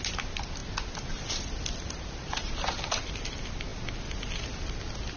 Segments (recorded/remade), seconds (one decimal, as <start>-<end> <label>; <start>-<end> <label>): 0.0-5.2 recorded